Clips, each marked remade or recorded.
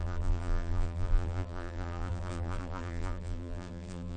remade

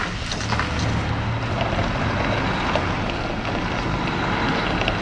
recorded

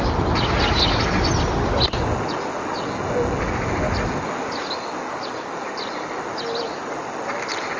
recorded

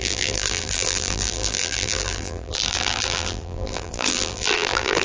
remade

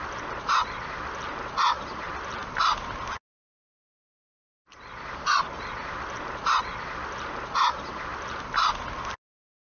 recorded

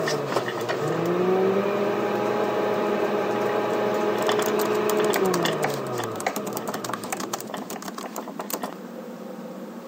recorded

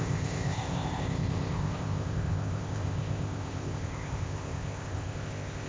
remade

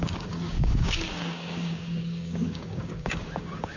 remade